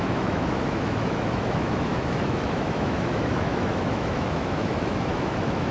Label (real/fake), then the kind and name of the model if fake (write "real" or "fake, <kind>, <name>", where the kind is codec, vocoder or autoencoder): fake, autoencoder, DAC-VAE